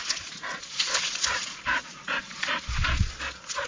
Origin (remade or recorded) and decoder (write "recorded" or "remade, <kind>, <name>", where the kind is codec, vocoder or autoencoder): remade, vocoder, Vocos